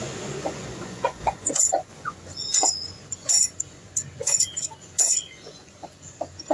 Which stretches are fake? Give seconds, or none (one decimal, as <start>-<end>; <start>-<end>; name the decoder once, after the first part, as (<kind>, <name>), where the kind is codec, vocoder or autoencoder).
0.0-6.5 (vocoder, Vocos)